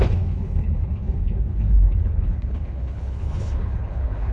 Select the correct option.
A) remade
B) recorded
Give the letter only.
A